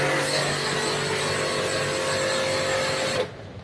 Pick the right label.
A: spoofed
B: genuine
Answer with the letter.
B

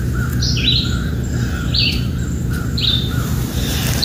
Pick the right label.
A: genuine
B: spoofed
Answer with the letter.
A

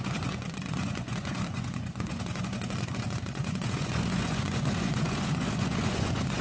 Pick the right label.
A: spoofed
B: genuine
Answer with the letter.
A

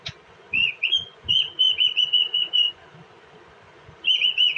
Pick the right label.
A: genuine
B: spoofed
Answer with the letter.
B